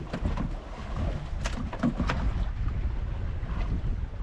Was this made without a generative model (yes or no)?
yes